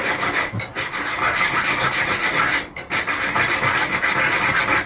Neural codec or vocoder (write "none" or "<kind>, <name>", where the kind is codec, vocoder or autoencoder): none